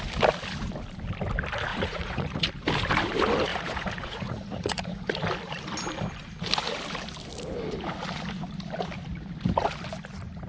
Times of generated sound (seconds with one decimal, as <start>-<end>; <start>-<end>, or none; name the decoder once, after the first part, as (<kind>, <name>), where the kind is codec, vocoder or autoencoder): 1.7-2.5 (vocoder, Vocos); 3.5-5.1